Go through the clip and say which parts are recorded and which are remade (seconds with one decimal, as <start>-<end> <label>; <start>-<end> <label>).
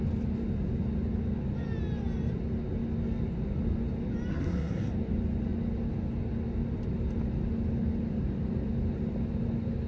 0.0-4.3 recorded; 4.3-4.9 remade; 4.9-9.9 recorded